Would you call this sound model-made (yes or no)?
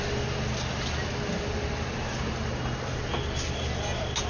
no